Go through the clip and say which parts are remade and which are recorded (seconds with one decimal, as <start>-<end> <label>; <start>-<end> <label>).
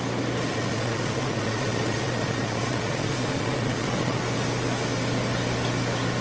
0.0-0.5 recorded; 0.5-4.2 remade; 4.2-6.2 recorded